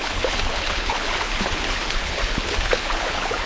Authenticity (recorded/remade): remade